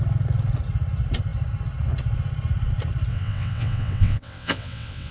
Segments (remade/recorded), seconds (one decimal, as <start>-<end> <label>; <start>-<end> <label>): 0.0-3.1 recorded; 3.1-5.1 remade